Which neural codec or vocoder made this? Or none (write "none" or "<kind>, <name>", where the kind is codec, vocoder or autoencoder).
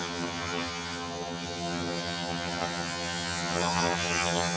vocoder, HiFi-GAN